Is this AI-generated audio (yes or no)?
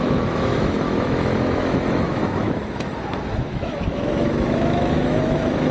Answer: yes